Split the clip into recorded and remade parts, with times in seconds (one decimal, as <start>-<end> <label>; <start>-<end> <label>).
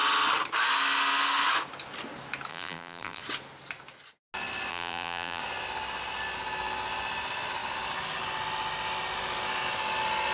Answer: 0.0-2.5 recorded; 2.5-3.2 remade; 3.2-4.7 recorded; 4.7-5.4 remade; 5.4-10.3 recorded